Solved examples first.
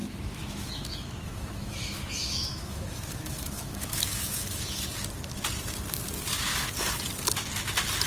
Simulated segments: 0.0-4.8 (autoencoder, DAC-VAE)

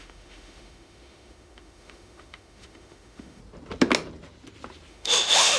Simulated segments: 0.0-3.4 (autoencoder, DAC-VAE); 4.9-5.6

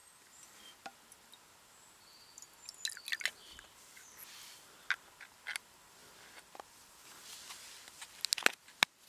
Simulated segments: none

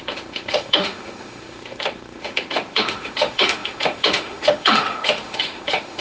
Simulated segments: 0.0-6.0 (autoencoder, DAC-VAE)

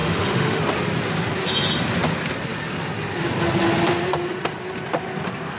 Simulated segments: 0.0-0.6 (autoencoder, DAC-VAE)

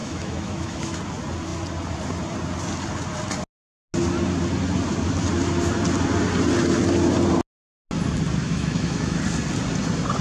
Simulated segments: 0.0-1.0 (autoencoder, DAC-VAE); 8.4-9.2